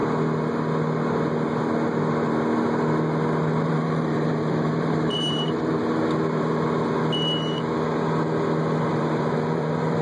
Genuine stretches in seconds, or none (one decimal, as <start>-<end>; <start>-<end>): 0.0-3.5; 5.8-8.9